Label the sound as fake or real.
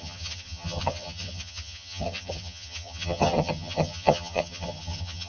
fake